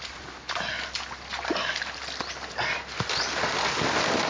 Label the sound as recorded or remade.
recorded